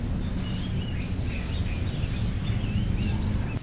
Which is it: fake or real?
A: real